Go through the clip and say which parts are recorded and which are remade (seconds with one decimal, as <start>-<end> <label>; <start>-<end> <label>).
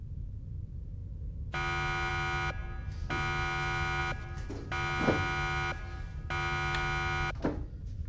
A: 0.0-8.1 recorded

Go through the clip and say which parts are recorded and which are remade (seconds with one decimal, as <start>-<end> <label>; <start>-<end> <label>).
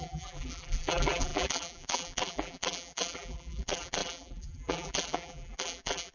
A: 0.0-6.1 remade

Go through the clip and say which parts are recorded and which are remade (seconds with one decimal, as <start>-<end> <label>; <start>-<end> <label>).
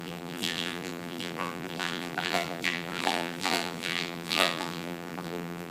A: 0.0-5.7 remade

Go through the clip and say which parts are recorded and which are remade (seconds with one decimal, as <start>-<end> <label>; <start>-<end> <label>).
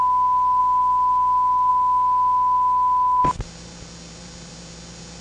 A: 0.0-5.2 recorded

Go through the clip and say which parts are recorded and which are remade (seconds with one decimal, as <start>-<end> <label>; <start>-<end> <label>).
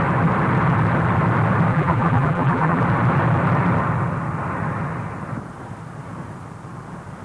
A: 0.0-1.7 recorded; 1.7-2.8 remade; 2.8-7.2 recorded